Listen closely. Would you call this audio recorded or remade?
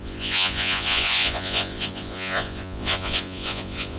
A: remade